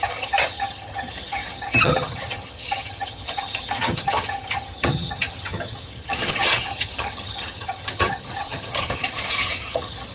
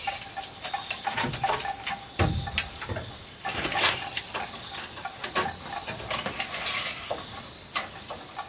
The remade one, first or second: first